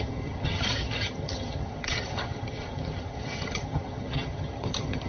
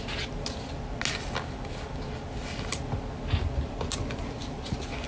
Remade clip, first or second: first